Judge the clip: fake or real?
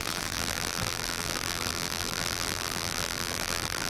fake